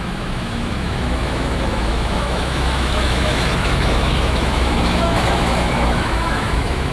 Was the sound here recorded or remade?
remade